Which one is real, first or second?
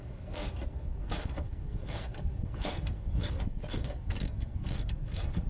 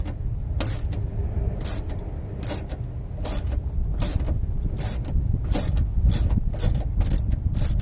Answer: second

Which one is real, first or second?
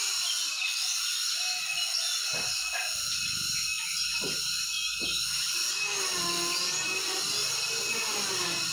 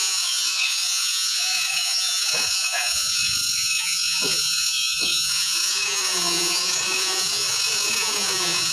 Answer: first